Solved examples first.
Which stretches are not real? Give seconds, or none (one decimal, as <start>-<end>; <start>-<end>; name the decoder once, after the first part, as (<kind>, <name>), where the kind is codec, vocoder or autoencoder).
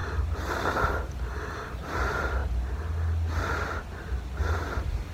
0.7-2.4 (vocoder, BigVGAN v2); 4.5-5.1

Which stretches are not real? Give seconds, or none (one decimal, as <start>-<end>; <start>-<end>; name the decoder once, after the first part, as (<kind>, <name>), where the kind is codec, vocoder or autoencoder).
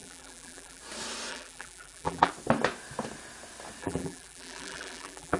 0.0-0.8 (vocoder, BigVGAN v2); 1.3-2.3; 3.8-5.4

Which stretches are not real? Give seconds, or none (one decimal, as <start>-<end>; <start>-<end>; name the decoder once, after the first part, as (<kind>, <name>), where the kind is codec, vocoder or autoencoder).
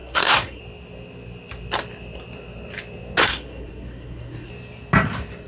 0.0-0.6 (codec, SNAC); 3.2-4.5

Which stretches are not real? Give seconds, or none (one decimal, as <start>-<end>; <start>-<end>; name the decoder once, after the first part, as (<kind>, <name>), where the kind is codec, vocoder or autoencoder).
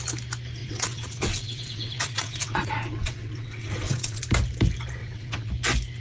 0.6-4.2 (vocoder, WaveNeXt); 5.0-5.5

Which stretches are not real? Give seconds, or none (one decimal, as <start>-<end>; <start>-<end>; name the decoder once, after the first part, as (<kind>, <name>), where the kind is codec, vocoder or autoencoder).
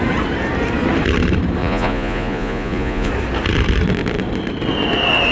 1.6-3.1 (vocoder, Vocos)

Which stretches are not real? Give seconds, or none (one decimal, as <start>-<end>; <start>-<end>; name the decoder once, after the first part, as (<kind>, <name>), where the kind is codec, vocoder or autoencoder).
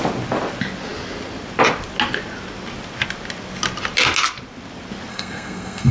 5.1-5.9 (codec, SNAC)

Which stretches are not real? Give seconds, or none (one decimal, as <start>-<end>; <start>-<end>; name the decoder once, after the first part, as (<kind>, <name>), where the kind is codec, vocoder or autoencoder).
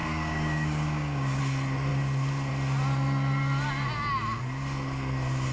0.0-1.4 (codec, DAC)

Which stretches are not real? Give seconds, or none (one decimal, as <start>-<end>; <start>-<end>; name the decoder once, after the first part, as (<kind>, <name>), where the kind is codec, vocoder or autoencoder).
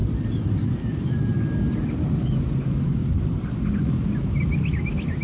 none